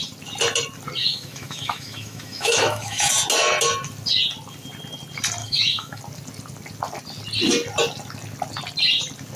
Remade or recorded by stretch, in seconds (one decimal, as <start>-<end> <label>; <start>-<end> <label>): 0.0-1.0 recorded; 1.0-3.1 remade; 3.1-5.4 recorded; 5.4-6.0 remade; 6.0-9.4 recorded